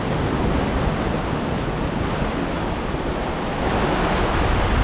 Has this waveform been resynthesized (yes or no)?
no